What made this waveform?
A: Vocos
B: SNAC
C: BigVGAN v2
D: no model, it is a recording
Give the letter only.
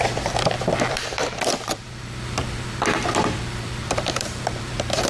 C